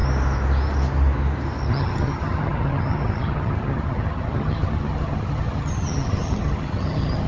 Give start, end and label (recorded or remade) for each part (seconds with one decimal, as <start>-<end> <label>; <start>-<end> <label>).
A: 0.0-1.7 recorded; 1.7-7.3 remade